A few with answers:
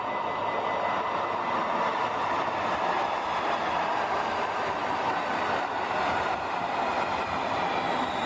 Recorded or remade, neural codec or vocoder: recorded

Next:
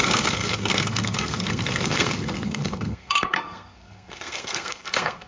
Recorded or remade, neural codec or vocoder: remade, codec, SNAC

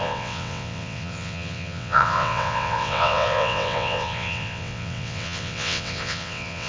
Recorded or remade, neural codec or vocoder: remade, vocoder, WaveNeXt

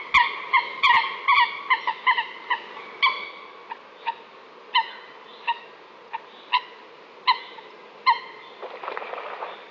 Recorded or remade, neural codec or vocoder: recorded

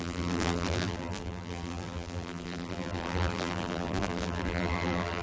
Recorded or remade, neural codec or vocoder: remade, vocoder, BigVGAN v2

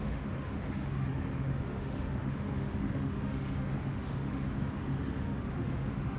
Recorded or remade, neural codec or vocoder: remade, autoencoder, DAC-VAE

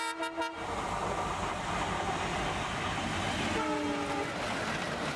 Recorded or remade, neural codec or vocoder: recorded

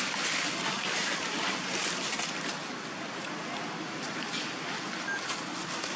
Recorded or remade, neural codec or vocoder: recorded